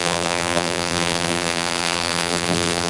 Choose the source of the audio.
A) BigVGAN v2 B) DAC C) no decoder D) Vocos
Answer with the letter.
A